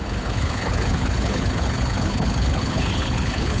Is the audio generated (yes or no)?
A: yes